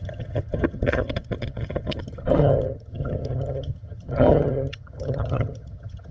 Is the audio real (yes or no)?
no